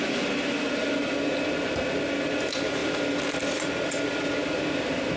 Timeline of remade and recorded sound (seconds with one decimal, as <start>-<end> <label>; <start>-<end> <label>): 0.0-5.2 recorded

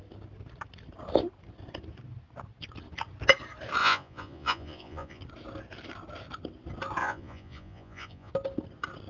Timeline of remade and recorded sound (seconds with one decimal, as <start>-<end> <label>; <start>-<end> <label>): 0.0-3.8 recorded; 3.8-5.2 remade; 5.2-7.0 recorded; 7.0-8.3 remade; 8.3-9.1 recorded

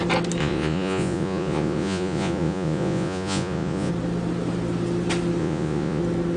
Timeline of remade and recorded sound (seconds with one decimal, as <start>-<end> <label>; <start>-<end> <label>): 0.0-0.4 recorded; 0.4-3.9 remade; 3.9-5.4 recorded; 5.4-6.0 remade; 6.0-6.4 recorded

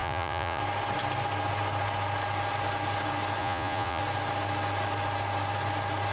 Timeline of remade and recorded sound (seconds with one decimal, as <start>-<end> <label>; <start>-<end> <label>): 0.0-0.6 remade; 0.6-3.4 recorded; 3.4-4.0 remade; 4.0-6.1 recorded

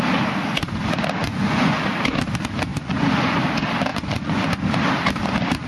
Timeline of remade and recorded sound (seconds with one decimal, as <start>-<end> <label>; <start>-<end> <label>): 0.0-1.2 recorded; 1.2-1.8 remade; 1.8-2.7 recorded; 2.7-3.4 remade; 3.4-3.9 recorded; 3.9-4.6 remade; 4.6-5.7 recorded

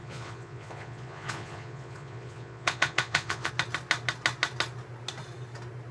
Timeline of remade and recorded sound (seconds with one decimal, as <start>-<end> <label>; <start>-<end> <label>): 0.0-3.5 remade; 3.5-5.9 recorded

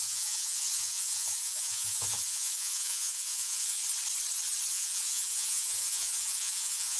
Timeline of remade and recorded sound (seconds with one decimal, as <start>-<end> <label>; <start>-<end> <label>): 0.0-3.8 remade; 3.8-4.7 recorded; 4.7-7.0 remade

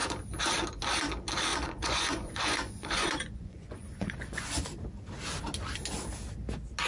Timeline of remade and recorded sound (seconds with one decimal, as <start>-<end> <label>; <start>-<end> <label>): 0.0-1.5 recorded; 1.5-4.7 remade; 4.7-6.9 recorded